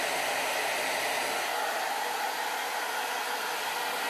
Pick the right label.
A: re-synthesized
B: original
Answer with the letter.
B